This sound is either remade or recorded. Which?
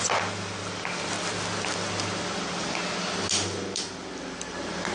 recorded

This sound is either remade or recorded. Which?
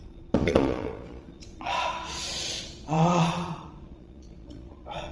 remade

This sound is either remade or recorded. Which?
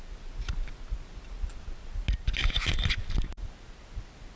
recorded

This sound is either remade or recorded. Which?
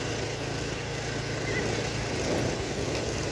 recorded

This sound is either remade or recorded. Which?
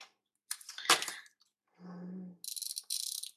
recorded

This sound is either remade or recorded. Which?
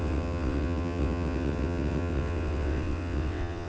remade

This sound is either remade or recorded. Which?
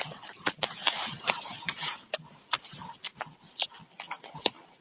recorded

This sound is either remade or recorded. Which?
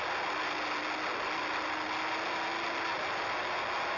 recorded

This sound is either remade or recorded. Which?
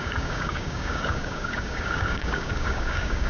remade